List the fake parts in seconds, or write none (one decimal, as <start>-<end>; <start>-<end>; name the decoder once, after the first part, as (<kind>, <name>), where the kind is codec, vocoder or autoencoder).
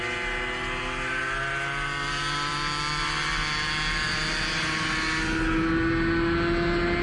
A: none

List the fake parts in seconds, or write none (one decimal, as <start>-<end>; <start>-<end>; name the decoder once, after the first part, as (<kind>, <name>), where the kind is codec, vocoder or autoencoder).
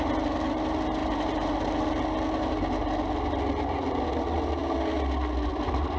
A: none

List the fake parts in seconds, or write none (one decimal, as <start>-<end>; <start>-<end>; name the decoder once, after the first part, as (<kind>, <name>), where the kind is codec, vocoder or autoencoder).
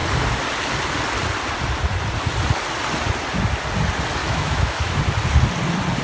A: 4.2-5.0 (autoencoder, DAC-VAE)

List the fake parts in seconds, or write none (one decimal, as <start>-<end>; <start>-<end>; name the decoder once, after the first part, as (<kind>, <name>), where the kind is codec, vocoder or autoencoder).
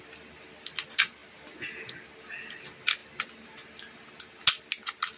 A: none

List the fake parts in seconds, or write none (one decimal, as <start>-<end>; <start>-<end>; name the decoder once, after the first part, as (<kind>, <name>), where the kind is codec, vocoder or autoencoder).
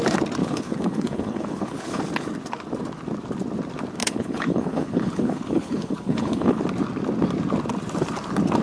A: 0.4-2.0 (codec, HILCodec); 4.0-6.6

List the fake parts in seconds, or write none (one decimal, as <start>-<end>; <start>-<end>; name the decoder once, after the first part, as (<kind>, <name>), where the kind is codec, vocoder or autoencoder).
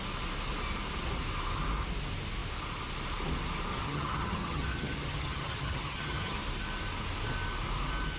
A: 3.7-6.4 (vocoder, HiFi-GAN)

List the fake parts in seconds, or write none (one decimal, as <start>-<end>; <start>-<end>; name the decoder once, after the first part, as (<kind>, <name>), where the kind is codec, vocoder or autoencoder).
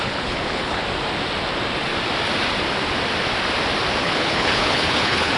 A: 0.0-0.8 (codec, HILCodec); 4.0-5.4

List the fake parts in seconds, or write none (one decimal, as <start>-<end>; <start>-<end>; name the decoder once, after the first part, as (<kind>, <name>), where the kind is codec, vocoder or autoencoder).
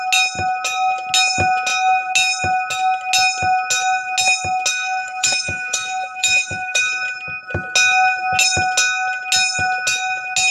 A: 4.7-6.8 (codec, DAC)